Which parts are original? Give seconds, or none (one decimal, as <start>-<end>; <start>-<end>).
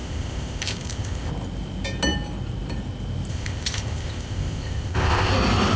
1.3-3.3; 5.3-5.8